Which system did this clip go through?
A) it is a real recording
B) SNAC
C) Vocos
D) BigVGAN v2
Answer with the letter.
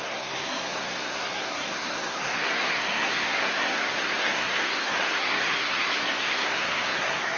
B